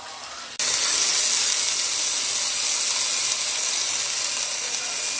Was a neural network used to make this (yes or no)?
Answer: no